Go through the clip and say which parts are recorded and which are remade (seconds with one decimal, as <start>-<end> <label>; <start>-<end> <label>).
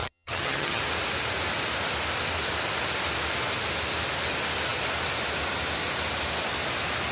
0.0-0.8 remade; 0.8-7.1 recorded